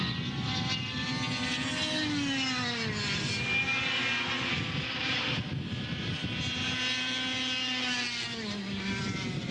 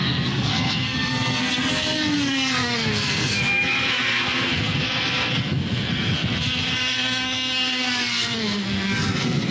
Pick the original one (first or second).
first